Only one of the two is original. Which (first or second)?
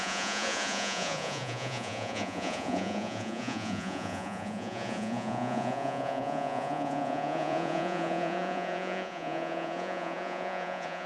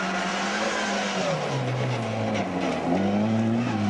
second